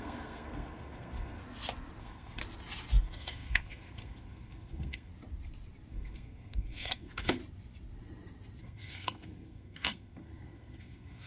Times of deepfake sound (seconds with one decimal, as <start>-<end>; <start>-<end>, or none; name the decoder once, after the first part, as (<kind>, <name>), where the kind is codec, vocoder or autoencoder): 0.0-1.4 (codec, SNAC); 2.0-2.4; 3.0-5.1; 5.9-7.4; 8.6-11.3